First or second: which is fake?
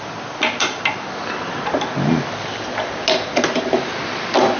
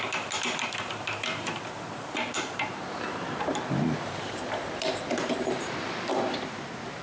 second